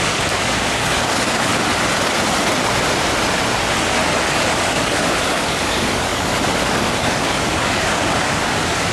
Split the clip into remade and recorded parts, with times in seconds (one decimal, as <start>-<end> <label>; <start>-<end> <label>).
0.0-1.5 remade; 1.5-4.3 recorded; 4.3-8.9 remade